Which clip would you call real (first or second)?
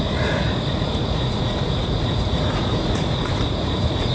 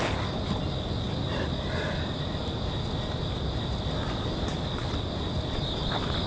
second